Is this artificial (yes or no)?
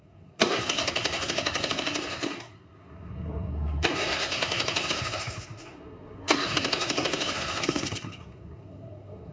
yes